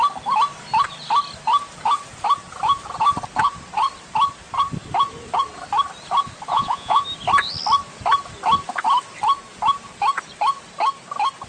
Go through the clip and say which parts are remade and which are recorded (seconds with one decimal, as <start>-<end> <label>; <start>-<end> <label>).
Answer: 0.0-6.5 recorded; 6.5-7.0 remade; 7.0-11.5 recorded